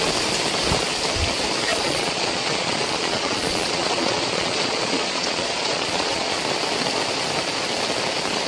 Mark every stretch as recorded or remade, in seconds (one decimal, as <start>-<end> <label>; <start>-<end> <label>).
0.0-1.7 recorded; 1.7-6.3 remade; 6.3-8.5 recorded